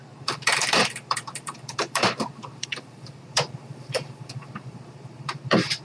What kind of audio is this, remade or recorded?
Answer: remade